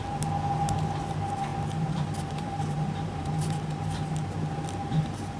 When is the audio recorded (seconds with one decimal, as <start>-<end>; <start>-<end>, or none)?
0.0-1.5; 3.7-5.4